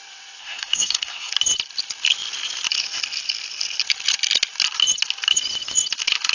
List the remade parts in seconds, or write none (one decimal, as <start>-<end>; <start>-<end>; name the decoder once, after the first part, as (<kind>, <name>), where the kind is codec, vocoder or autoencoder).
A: 0.4-1.3 (codec, SNAC)